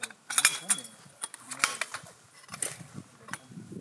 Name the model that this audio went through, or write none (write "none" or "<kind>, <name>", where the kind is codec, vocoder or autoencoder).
none